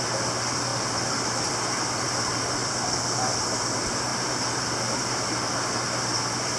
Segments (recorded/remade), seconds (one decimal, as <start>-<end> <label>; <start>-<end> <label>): 0.0-0.7 recorded; 0.7-1.5 remade; 1.5-4.1 recorded; 4.1-5.4 remade; 5.4-6.6 recorded